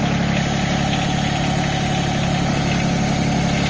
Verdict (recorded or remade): recorded